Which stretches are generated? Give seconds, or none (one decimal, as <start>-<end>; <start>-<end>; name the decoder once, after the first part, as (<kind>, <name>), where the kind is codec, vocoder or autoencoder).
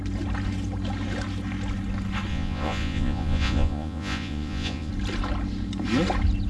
2.3-4.9 (vocoder, Vocos)